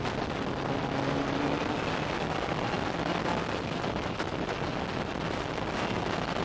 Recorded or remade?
recorded